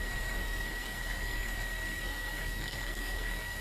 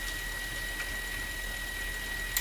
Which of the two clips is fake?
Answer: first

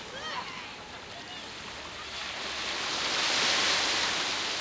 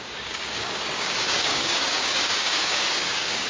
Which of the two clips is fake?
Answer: second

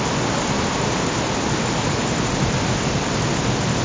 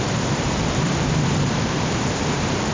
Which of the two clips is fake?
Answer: second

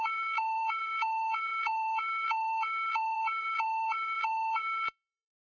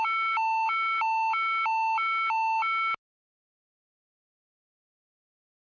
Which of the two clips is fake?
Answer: first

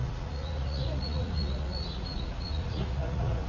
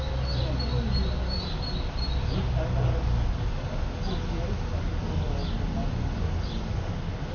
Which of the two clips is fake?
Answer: first